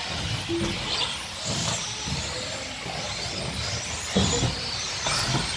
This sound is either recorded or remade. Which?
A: recorded